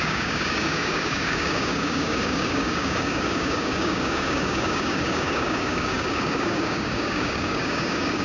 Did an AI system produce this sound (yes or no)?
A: yes